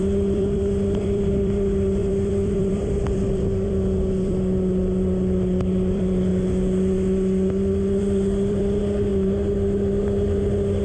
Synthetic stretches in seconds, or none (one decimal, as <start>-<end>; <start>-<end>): 0.0-6.3; 8.0-9.1